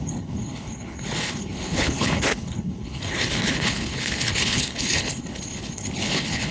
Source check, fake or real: fake